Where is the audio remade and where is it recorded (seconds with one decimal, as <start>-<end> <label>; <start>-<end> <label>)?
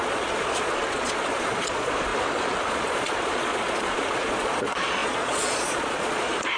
0.0-2.1 remade; 2.1-2.7 recorded; 2.7-6.6 remade